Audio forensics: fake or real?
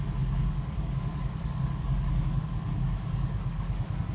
fake